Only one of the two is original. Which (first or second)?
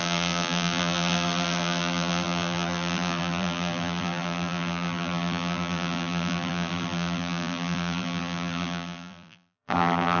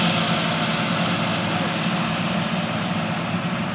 second